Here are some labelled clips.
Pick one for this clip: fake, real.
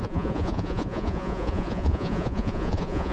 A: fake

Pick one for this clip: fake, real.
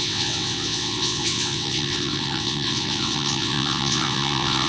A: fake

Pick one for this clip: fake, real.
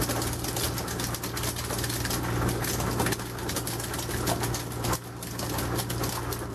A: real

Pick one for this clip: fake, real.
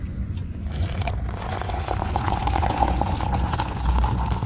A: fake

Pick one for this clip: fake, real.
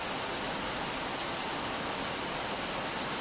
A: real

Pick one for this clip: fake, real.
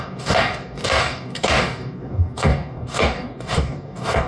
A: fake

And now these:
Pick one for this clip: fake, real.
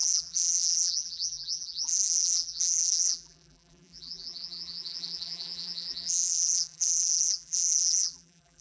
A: fake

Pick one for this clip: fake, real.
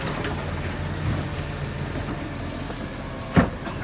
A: real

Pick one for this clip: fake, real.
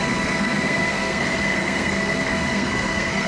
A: fake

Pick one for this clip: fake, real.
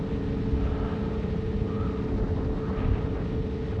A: real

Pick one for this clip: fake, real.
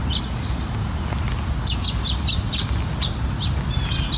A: real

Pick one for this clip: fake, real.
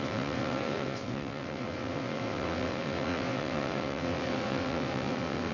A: fake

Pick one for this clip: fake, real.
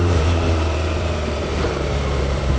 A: fake